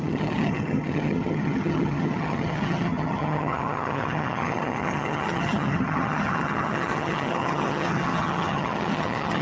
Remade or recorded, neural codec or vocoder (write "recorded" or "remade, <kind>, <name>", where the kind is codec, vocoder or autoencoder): remade, vocoder, HiFi-GAN